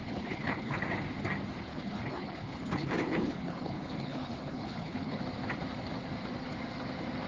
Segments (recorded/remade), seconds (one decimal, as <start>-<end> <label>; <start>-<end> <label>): 0.0-0.8 remade; 0.8-1.7 recorded; 1.7-5.2 remade; 5.2-7.3 recorded